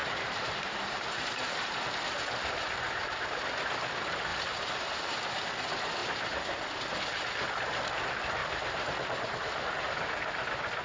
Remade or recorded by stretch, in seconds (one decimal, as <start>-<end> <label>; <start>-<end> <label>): 0.0-1.8 remade; 1.8-4.3 recorded; 4.3-5.2 remade; 5.2-8.4 recorded; 8.4-9.7 remade; 9.7-10.8 recorded